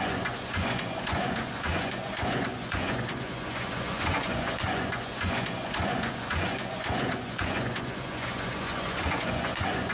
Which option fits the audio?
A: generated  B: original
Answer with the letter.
A